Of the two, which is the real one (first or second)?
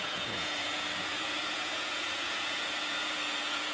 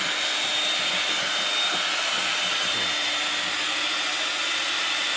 second